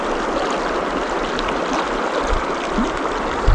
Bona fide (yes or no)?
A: yes